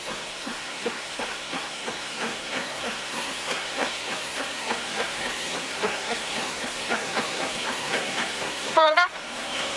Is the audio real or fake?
fake